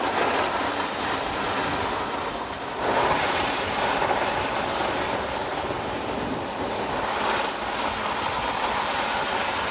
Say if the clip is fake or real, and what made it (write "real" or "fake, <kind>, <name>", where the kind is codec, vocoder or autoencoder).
real